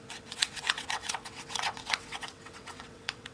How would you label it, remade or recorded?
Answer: remade